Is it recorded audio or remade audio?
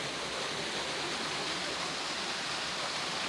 recorded